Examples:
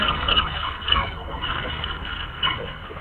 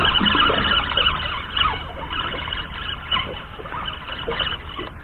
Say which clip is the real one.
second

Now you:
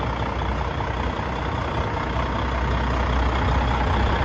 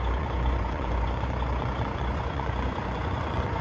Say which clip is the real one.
first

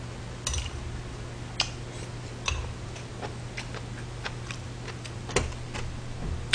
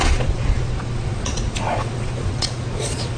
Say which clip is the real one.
first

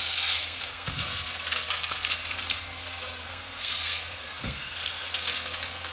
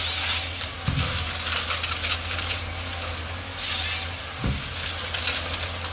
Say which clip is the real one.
second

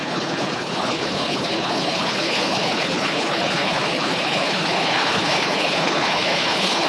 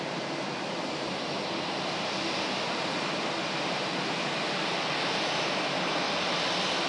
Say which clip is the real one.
second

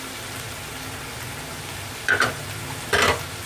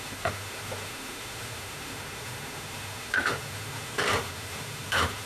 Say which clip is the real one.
first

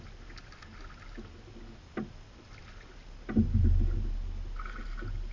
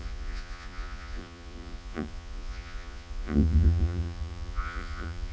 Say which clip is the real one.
first